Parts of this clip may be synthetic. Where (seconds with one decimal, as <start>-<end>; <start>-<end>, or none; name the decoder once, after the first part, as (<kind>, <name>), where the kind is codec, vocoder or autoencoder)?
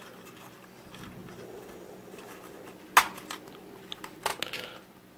none